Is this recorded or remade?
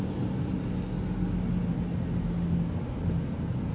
recorded